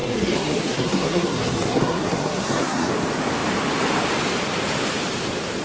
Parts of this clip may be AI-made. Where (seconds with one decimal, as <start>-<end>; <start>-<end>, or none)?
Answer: 0.0-2.9